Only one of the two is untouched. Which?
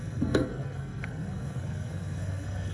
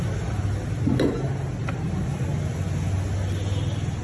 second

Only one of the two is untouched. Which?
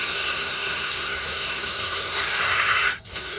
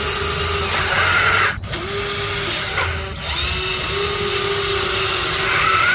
second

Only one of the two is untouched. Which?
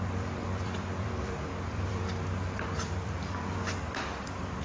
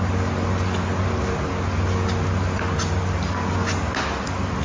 second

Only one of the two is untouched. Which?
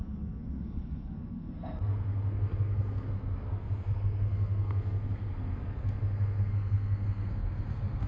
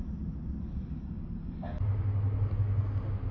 second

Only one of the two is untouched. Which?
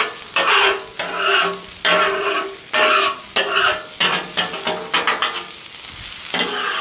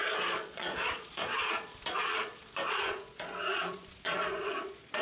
first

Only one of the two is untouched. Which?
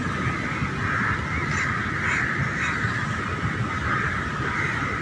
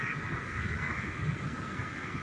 first